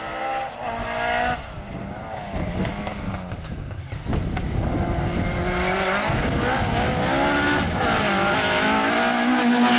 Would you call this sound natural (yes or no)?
yes